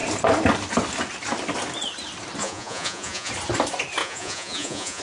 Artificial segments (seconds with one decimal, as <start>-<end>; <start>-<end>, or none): 2.4-3.3; 4.0-5.0